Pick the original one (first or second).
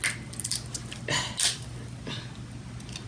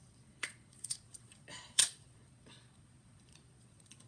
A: first